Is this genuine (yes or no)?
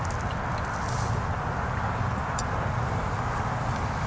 yes